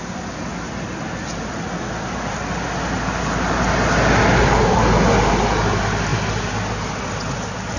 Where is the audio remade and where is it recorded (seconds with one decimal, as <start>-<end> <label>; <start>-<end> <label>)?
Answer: 0.0-7.8 recorded